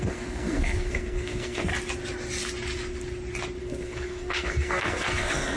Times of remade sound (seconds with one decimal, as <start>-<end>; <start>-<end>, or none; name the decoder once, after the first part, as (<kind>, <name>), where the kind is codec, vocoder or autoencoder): 0.0-1.7 (codec, SNAC); 3.6-5.6